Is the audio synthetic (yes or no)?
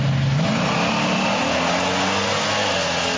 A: no